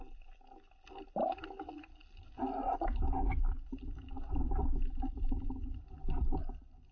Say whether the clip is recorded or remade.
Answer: recorded